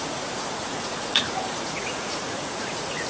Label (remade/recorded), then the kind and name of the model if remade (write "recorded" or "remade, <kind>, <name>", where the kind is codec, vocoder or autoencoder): remade, vocoder, Vocos